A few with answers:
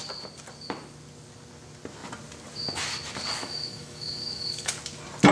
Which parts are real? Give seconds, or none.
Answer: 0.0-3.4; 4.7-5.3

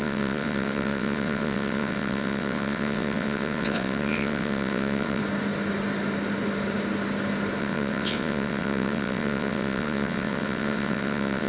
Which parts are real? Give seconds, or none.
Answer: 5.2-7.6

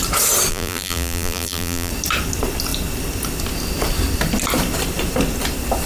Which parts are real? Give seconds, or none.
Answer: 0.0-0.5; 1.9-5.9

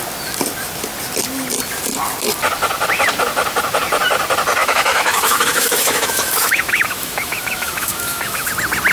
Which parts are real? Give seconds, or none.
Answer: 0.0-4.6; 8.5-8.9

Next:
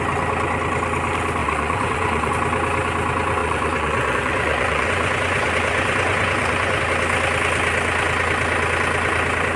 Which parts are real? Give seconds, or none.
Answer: 0.0-1.4; 2.3-3.4; 6.8-9.6

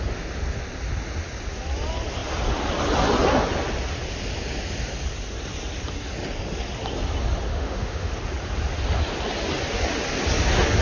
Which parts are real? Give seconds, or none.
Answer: 0.0-7.5; 8.1-10.8

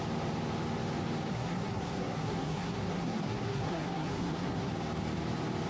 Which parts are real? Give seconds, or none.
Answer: 0.0-1.3; 4.7-5.7

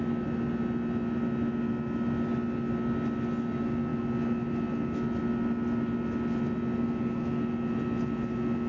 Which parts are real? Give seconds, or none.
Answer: 0.0-8.7